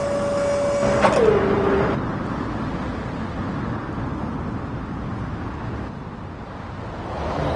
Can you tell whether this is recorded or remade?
recorded